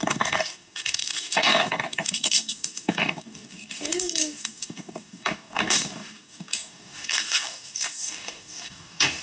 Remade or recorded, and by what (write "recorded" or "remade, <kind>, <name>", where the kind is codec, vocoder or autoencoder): remade, codec, DAC